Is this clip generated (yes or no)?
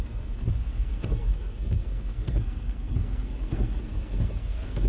yes